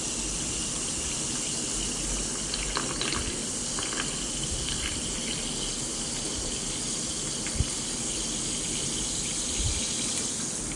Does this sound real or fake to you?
real